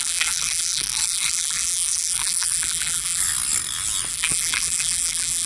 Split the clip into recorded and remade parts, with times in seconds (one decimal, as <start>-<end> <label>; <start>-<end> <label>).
0.0-3.2 remade; 3.2-4.1 recorded; 4.1-5.5 remade

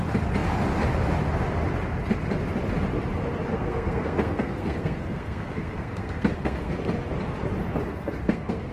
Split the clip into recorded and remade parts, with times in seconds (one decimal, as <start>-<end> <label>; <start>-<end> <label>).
0.0-3.5 recorded; 3.5-6.7 remade; 6.7-7.9 recorded; 7.9-8.7 remade

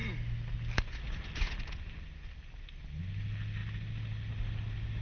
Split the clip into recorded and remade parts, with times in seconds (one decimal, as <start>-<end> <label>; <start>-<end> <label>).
0.0-5.0 recorded

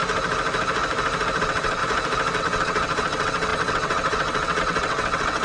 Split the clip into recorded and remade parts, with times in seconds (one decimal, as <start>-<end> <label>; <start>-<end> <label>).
0.0-1.4 recorded; 1.4-1.8 remade; 1.8-2.4 recorded; 2.4-5.4 remade

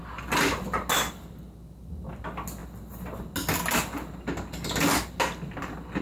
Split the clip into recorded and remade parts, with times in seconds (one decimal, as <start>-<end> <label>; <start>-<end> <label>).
0.0-6.0 recorded